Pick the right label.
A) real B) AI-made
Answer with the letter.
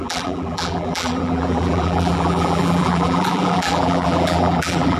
B